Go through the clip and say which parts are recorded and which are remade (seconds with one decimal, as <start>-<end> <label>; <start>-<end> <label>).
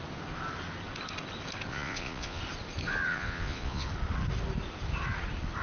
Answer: 0.0-1.7 recorded; 1.7-2.4 remade; 2.4-3.1 recorded; 3.1-3.9 remade; 3.9-5.6 recorded